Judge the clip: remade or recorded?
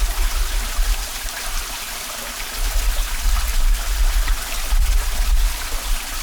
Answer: recorded